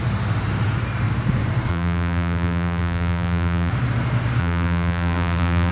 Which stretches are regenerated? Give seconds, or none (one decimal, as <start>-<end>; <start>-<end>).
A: 1.7-3.7; 4.4-5.7